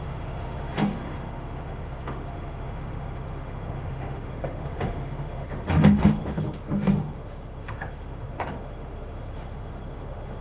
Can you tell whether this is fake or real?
fake